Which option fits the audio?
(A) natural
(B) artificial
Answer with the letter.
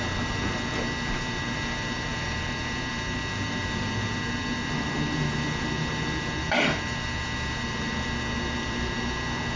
B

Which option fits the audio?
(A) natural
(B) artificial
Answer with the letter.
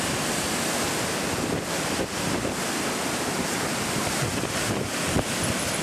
A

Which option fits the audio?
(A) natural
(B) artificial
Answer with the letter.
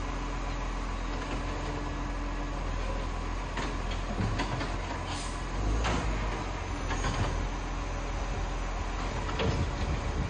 A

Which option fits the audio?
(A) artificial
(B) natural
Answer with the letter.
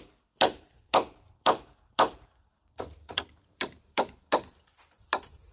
A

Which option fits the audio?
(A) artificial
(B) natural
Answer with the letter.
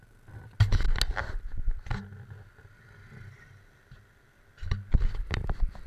B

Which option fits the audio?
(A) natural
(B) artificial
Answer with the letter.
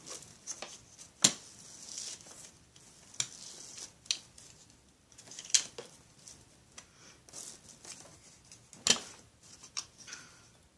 A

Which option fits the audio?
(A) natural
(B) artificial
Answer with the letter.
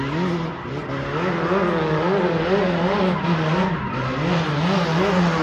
A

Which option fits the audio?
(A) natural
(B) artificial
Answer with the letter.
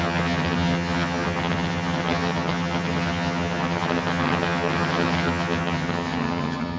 B